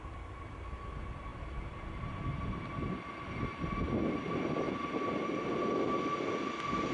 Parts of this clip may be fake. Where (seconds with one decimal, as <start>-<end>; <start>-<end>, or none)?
none